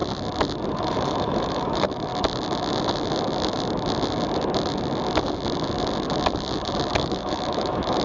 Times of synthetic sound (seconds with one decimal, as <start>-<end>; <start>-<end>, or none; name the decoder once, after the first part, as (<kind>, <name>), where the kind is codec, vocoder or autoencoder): 0.7-2.1 (autoencoder, DAC-VAE); 6.9-8.0